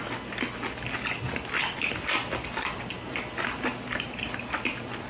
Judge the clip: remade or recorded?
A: recorded